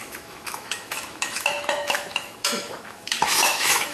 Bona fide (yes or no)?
no